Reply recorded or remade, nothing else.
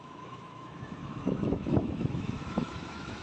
remade